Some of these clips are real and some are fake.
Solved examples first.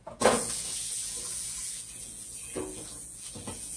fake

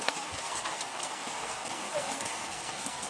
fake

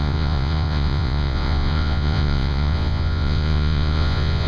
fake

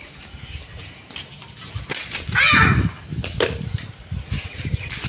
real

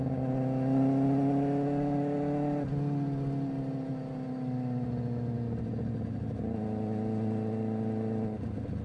real